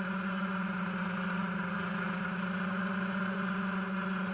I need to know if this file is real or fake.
real